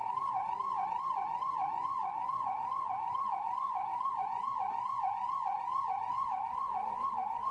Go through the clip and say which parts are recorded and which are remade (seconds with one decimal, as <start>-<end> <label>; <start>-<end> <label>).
0.0-1.0 recorded; 1.0-7.5 remade